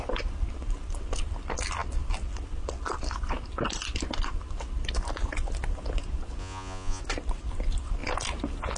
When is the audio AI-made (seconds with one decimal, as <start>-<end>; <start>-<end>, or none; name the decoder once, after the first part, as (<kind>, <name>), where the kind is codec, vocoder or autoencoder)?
6.4-7.0 (vocoder, Vocos)